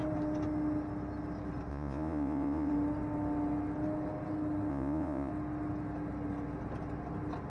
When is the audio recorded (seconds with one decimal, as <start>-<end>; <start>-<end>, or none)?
0.0-1.7; 2.7-4.7; 5.3-7.5